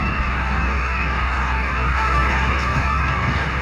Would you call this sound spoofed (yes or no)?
yes